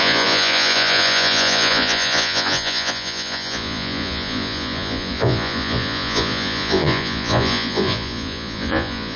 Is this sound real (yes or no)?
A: no